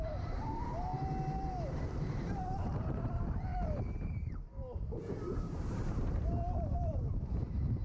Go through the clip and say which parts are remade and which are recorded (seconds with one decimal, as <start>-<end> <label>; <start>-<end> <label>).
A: 0.0-0.9 remade; 0.9-1.5 recorded; 1.5-3.5 remade; 3.5-5.0 recorded; 5.0-7.8 remade